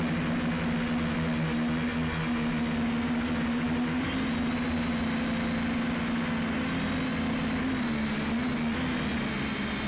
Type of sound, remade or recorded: recorded